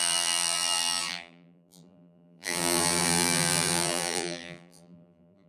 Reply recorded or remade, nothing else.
remade